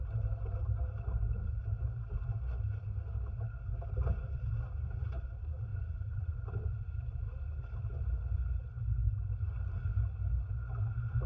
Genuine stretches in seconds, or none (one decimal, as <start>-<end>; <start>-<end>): 0.0-5.7; 7.5-11.3